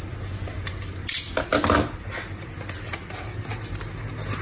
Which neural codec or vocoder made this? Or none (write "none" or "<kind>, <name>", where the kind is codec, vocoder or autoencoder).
none